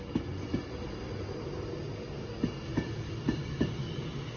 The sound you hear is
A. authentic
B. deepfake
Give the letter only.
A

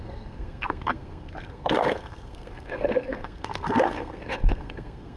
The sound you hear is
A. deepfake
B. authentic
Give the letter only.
A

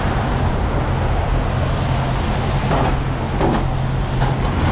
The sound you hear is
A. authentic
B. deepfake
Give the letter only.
A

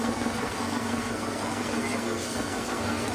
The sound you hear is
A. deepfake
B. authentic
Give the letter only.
A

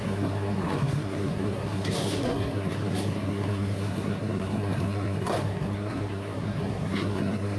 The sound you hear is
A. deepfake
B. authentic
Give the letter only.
A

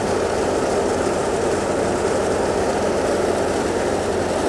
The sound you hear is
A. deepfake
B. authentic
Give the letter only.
B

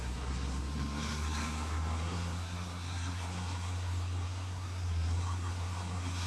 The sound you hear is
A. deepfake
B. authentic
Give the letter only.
A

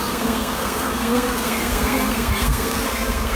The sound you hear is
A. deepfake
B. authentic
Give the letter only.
A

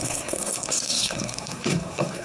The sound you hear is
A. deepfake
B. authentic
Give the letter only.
A